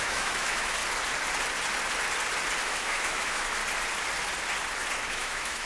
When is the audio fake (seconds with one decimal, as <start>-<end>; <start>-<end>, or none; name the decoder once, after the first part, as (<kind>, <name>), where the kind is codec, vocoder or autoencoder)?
0.0-0.8 (autoencoder, DAC-VAE); 2.6-3.6; 5.1-5.7